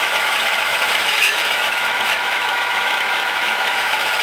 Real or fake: fake